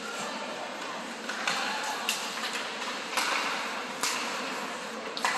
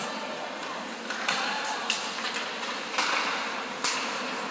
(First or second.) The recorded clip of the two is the second